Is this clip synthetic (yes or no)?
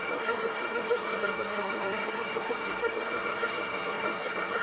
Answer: yes